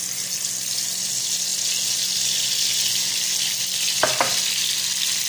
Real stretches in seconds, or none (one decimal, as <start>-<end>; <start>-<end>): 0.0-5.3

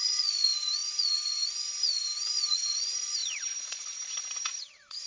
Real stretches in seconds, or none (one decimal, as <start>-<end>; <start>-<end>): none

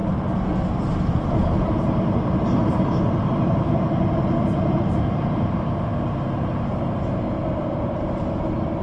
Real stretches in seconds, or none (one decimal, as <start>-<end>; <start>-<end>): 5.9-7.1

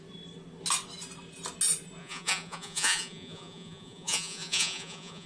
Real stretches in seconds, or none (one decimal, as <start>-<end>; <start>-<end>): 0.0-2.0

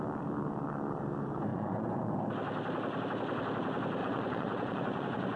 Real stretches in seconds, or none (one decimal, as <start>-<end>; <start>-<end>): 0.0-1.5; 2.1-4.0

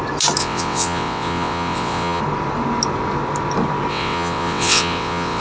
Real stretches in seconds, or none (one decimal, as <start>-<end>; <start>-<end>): 0.0-0.4; 2.2-3.9

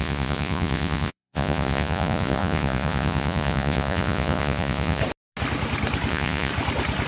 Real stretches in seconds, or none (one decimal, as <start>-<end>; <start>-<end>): 5.0-6.1; 6.5-7.1